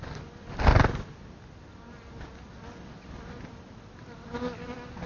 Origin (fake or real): real